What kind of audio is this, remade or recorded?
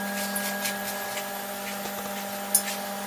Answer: recorded